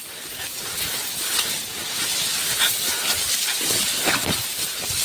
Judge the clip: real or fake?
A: real